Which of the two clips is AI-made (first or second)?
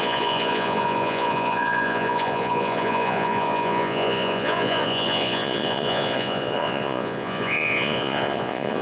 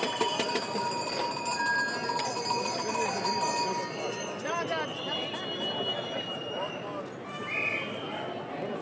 first